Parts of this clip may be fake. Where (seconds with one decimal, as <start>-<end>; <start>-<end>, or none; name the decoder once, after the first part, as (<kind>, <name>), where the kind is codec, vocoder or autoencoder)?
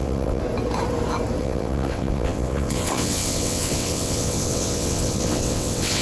0.0-0.4 (vocoder, WaveNeXt); 1.4-6.0